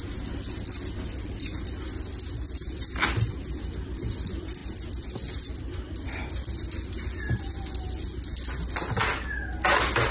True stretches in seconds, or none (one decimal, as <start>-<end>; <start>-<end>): 0.0-10.1

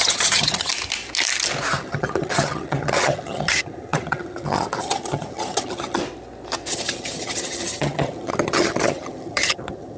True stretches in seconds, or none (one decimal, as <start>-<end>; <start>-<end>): 0.7-1.7; 6.0-6.7

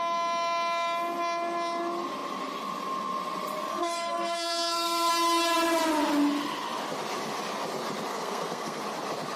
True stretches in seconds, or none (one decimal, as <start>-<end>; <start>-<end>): 0.0-3.7; 5.1-8.1; 8.8-9.4